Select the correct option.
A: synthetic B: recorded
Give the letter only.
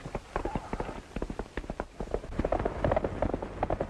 B